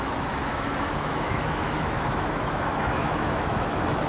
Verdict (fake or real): fake